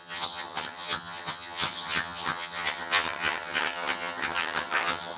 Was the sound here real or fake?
fake